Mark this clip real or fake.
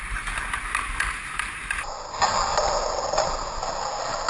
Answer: real